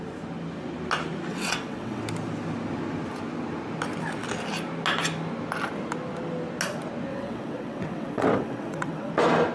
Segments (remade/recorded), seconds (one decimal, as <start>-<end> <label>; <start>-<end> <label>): 0.0-1.3 recorded; 1.3-2.0 remade; 2.0-7.1 recorded; 7.1-9.1 remade; 9.1-9.5 recorded

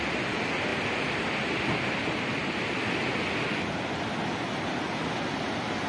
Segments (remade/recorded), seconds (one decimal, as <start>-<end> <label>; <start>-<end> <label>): 0.0-5.9 recorded

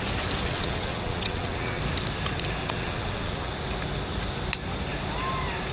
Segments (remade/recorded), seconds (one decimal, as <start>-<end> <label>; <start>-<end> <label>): 0.0-0.4 recorded; 0.4-1.8 remade; 1.8-2.6 recorded; 2.6-3.5 remade; 3.5-5.7 recorded

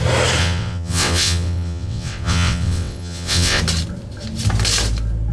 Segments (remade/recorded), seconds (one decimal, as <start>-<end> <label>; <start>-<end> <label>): 0.0-0.4 recorded; 0.4-3.6 remade; 3.6-5.3 recorded

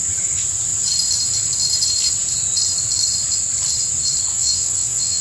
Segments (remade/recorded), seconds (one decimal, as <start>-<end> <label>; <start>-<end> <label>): 0.0-4.3 recorded; 4.3-5.2 remade

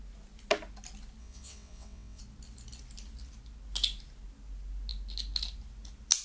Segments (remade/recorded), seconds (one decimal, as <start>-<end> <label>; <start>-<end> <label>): 0.0-1.2 recorded; 1.2-2.2 remade; 2.2-6.2 recorded

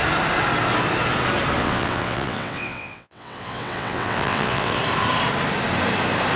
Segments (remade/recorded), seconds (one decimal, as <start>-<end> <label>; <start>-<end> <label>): 0.0-1.6 recorded; 1.6-4.8 remade; 4.8-6.4 recorded

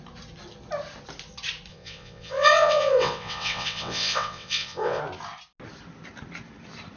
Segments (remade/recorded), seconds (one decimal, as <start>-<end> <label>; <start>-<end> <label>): 0.0-1.7 recorded; 1.7-5.0 remade; 5.0-7.0 recorded